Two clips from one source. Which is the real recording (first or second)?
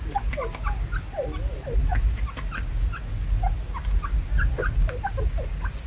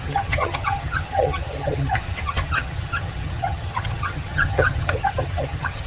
first